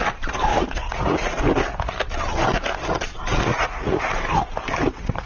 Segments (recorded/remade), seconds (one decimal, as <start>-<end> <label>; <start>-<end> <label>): 0.0-0.5 recorded; 0.5-1.4 remade; 1.4-3.5 recorded; 3.5-4.0 remade; 4.0-5.3 recorded

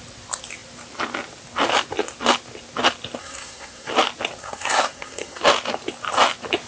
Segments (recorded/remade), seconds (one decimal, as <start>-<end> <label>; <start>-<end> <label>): 0.0-3.2 recorded; 3.2-3.9 remade; 3.9-4.4 recorded; 4.4-5.4 remade; 5.4-6.7 recorded